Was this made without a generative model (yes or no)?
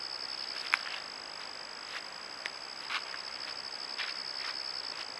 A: yes